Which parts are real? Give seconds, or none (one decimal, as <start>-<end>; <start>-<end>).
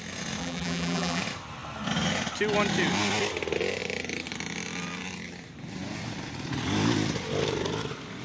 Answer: 0.0-0.4; 1.2-8.2